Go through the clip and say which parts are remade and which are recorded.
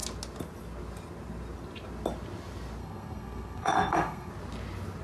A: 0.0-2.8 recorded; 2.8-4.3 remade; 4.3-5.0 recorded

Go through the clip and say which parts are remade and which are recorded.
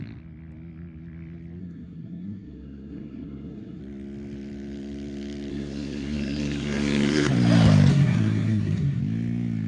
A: 0.0-1.6 recorded; 1.6-3.8 remade; 3.8-5.5 recorded; 5.5-7.3 remade; 7.3-7.9 recorded; 7.9-9.0 remade; 9.0-9.7 recorded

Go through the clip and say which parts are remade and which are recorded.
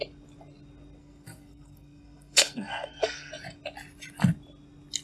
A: 0.0-1.0 recorded; 1.0-3.3 remade; 3.3-5.0 recorded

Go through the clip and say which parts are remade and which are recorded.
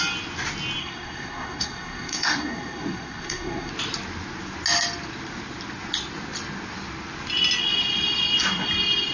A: 0.0-0.8 recorded; 0.8-3.7 remade; 3.7-9.1 recorded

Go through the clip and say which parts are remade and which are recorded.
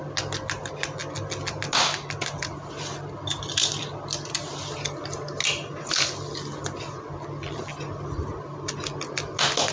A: 0.0-9.7 recorded